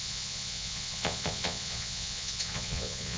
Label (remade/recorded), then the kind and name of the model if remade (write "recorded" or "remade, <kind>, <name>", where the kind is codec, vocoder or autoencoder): remade, vocoder, Vocos